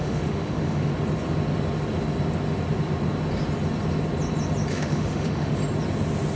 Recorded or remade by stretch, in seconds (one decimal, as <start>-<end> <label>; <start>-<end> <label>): 0.0-0.9 remade; 0.9-4.7 recorded; 4.7-5.6 remade; 5.6-6.4 recorded